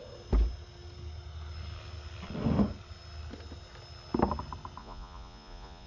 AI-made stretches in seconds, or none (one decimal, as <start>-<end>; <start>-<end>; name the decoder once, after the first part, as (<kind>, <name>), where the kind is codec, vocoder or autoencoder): 4.8-5.9 (vocoder, Vocos)